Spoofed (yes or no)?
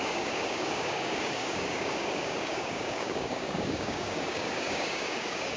yes